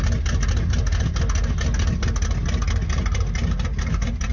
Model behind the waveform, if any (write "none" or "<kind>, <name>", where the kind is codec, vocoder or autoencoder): none